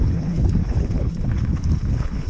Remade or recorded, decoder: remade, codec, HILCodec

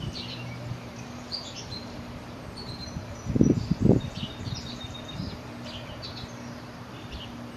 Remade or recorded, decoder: remade, vocoder, BigVGAN v2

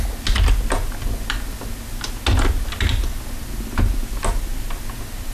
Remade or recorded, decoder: recorded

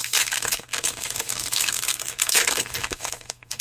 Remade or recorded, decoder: remade, codec, SNAC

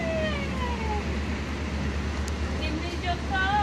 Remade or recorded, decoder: recorded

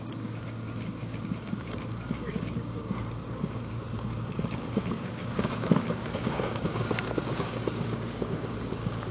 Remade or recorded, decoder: remade, codec, DAC